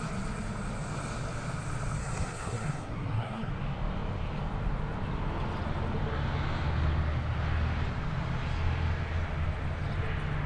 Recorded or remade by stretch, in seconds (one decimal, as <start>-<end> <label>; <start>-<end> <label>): 0.0-2.0 recorded; 2.0-3.5 remade; 3.5-10.5 recorded